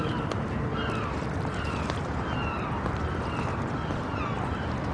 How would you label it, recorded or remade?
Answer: recorded